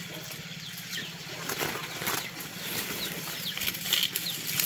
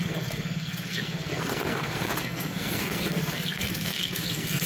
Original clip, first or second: first